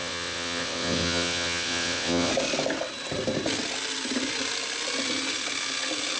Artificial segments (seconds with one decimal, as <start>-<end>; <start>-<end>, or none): 0.0-2.3

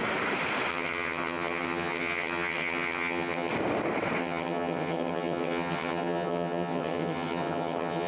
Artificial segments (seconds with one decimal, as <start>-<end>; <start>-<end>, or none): 0.7-3.5; 4.2-8.1

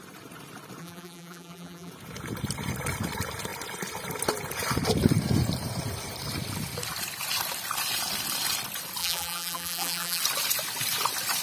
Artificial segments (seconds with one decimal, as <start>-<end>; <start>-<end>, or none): 0.8-1.9; 9.0-10.2

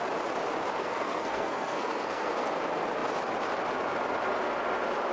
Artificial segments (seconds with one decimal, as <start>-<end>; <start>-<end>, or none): 0.8-2.6